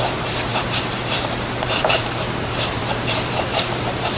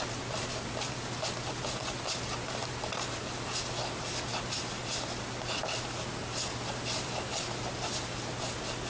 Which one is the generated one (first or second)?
first